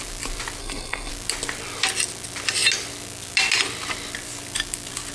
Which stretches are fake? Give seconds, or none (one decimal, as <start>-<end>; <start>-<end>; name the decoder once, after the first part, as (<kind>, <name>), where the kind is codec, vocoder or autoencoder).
0.6-1.1 (codec, SNAC)